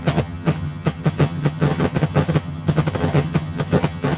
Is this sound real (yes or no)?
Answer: no